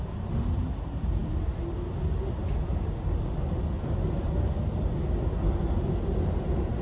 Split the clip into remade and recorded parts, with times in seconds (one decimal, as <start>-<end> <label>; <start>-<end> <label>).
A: 0.0-6.8 recorded